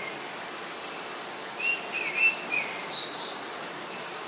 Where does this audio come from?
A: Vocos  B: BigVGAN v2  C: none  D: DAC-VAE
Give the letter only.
C